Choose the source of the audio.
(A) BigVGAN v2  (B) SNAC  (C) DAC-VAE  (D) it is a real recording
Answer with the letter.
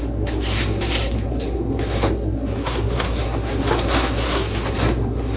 B